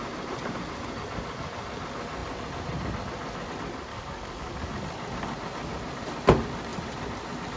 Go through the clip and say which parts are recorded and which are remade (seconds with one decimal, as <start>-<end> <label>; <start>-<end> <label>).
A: 0.0-3.9 recorded; 3.9-4.7 remade; 4.7-7.6 recorded